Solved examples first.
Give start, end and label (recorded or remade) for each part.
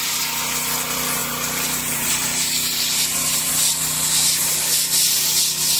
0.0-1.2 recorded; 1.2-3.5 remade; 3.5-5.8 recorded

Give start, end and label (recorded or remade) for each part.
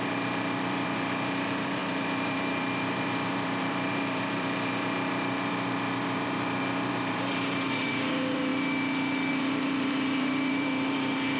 0.0-8.5 remade; 8.5-9.3 recorded; 9.3-11.4 remade